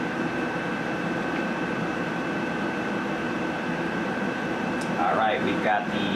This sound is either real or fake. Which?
fake